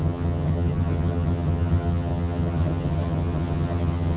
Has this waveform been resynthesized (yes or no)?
yes